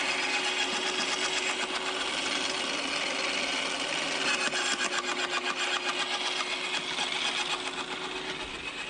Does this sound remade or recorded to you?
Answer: recorded